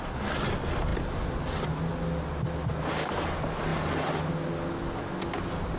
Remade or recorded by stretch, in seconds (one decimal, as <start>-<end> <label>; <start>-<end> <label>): 0.0-5.8 recorded

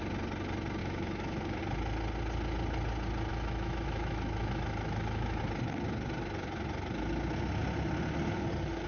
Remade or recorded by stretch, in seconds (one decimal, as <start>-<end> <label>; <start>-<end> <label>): 0.0-0.8 recorded; 0.8-1.6 remade; 1.6-3.3 recorded; 3.3-5.4 remade; 5.4-8.9 recorded

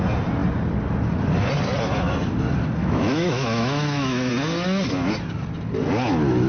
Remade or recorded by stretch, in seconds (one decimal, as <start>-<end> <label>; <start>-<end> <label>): 0.0-2.8 recorded; 2.8-4.3 remade; 4.3-6.5 recorded

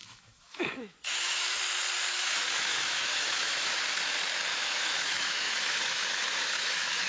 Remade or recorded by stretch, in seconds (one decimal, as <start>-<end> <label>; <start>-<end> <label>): 0.0-1.6 remade; 1.6-2.1 recorded; 2.1-3.8 remade; 3.8-4.5 recorded; 4.5-7.1 remade

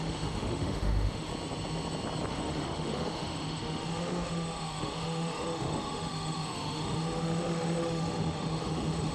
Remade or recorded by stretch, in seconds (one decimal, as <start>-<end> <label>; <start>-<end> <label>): 0.0-1.3 remade; 1.3-2.3 recorded; 2.3-9.1 remade

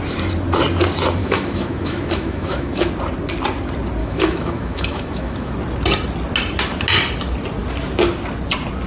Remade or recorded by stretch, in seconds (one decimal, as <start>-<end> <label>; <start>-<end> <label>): 0.0-1.2 recorded; 1.2-2.9 remade; 2.9-4.0 recorded; 4.0-5.5 remade; 5.5-8.9 recorded

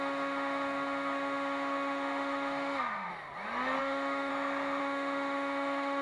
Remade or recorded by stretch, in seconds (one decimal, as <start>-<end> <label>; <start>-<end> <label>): 0.0-3.1 remade; 3.1-3.8 recorded; 3.8-4.3 remade; 4.3-4.8 recorded; 4.8-6.0 remade